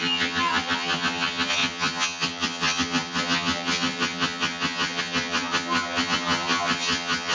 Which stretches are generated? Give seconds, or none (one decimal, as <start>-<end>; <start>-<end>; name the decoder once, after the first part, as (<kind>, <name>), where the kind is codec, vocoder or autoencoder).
0.0-7.3 (vocoder, HiFi-GAN)